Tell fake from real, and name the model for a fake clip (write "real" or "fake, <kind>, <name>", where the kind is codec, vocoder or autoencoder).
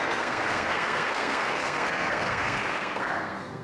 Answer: fake, codec, SNAC